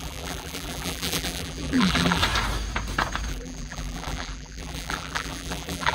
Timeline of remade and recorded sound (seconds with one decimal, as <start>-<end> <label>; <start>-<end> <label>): 0.0-2.2 remade; 2.2-3.3 recorded; 3.3-5.9 remade